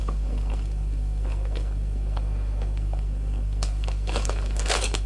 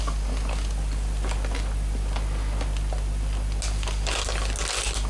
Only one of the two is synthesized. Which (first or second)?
first